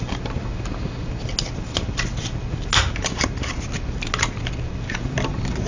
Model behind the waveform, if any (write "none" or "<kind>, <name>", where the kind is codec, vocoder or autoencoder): none